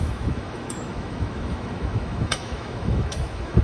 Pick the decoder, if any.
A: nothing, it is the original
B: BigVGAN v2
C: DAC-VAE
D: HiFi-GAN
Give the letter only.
C